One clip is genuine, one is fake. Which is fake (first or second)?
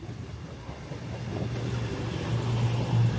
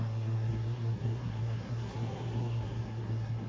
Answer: second